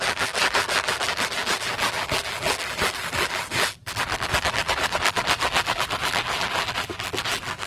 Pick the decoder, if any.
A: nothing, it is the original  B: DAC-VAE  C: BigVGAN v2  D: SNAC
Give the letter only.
C